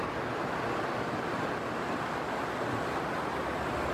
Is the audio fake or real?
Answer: real